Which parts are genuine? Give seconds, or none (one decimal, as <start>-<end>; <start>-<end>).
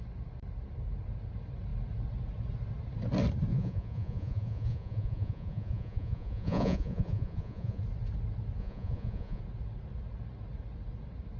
0.0-3.5; 7.8-8.6; 9.4-11.4